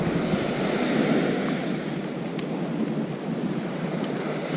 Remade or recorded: recorded